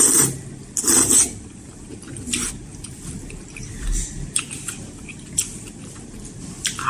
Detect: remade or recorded recorded